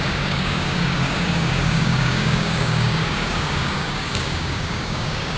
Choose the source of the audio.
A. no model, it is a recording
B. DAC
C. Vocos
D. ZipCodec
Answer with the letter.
B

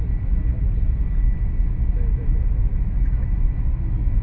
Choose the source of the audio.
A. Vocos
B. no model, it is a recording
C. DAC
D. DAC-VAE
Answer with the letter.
B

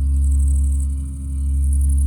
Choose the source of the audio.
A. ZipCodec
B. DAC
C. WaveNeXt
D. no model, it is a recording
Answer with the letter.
D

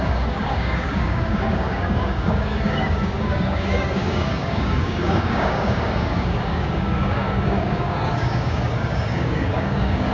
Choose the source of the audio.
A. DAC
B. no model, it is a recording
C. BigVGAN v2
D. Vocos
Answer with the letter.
A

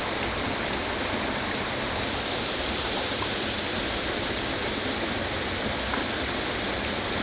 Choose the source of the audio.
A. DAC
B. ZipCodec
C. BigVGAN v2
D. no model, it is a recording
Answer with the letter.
D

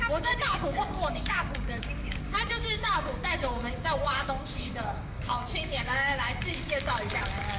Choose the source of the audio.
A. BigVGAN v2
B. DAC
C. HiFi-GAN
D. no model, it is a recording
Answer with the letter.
B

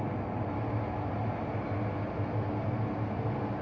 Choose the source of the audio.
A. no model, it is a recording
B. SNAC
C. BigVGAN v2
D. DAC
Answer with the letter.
A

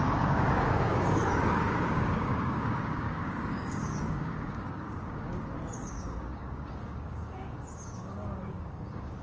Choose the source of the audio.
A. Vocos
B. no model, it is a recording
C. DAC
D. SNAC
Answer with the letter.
C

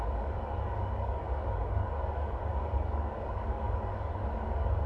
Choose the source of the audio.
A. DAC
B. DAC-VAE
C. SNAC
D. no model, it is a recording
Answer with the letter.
A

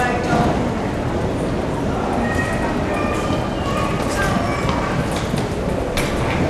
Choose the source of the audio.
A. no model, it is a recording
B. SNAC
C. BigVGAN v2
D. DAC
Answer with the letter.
A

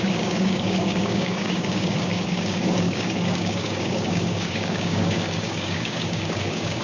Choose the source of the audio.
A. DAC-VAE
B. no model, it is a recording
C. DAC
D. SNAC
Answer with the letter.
C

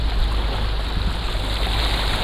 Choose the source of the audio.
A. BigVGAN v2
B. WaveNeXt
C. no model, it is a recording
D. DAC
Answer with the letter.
C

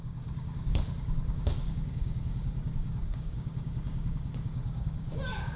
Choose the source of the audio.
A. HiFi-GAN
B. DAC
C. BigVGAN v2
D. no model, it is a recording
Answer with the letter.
B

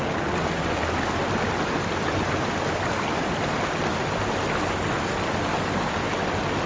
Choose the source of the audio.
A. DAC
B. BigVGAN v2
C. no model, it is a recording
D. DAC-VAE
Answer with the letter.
C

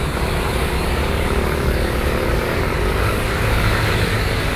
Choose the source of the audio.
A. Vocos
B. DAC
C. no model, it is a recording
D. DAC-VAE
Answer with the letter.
B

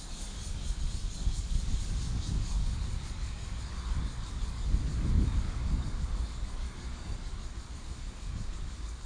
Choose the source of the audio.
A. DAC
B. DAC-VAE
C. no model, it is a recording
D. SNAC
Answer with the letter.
A